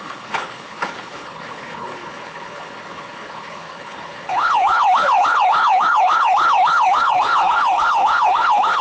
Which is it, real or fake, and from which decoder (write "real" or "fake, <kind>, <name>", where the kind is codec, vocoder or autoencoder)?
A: fake, codec, HILCodec